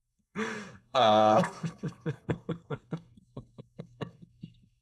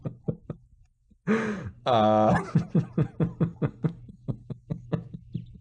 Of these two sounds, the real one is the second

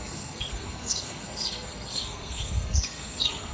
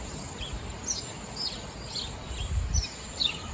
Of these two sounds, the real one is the second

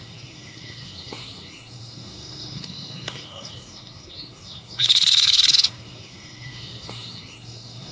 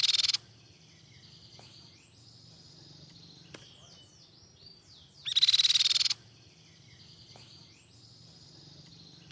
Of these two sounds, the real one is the second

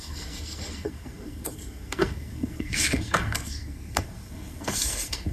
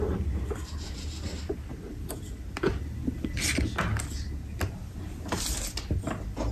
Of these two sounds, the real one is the second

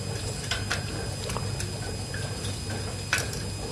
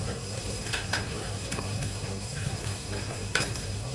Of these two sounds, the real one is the first